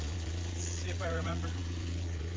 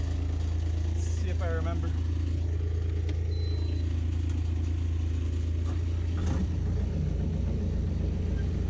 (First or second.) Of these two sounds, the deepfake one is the first